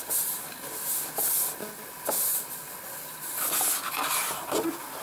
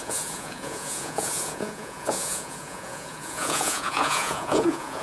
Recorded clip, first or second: first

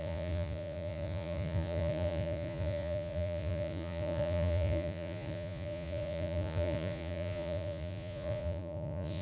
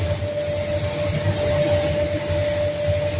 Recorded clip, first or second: second